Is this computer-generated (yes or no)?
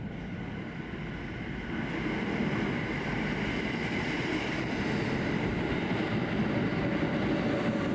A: no